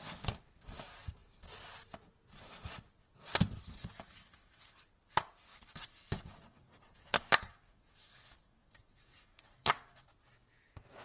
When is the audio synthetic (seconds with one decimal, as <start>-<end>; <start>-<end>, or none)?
3.6-4.8; 5.5-10.1